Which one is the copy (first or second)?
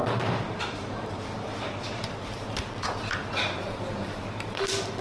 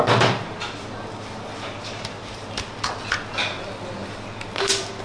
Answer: first